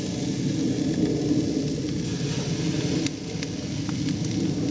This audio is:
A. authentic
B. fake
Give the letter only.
A